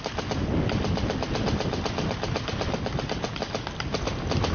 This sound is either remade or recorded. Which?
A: recorded